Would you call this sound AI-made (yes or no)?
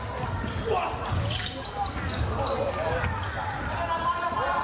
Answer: no